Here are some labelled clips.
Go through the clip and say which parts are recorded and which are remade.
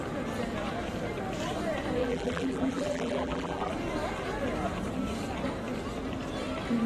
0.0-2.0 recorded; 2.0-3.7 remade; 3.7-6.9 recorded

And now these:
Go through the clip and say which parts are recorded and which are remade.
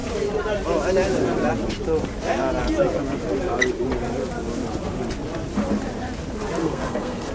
0.0-6.6 recorded; 6.6-7.3 remade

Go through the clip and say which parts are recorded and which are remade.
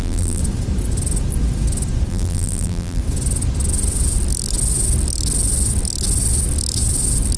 0.0-0.4 remade; 0.4-2.1 recorded; 2.1-3.0 remade; 3.0-7.4 recorded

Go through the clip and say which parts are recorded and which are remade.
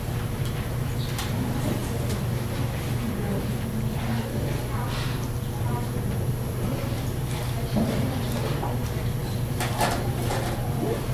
0.0-11.1 recorded